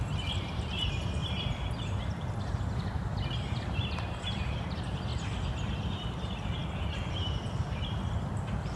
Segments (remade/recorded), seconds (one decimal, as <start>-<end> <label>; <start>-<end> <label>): 0.0-1.2 remade; 1.2-3.6 recorded; 3.6-5.1 remade; 5.1-5.9 recorded; 5.9-8.8 remade